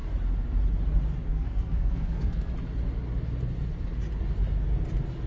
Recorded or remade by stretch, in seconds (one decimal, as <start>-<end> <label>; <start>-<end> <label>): 0.0-1.3 recorded; 1.3-2.5 remade; 2.5-5.3 recorded